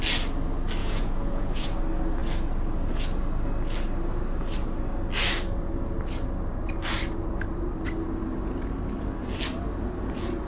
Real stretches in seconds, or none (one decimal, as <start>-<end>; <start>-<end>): 0.0-0.8; 1.8-10.5